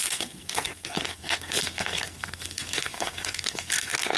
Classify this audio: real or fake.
fake